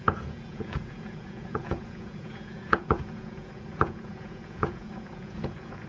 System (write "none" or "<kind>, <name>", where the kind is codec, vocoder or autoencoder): vocoder, Vocos